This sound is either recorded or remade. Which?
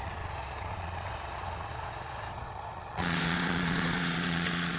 remade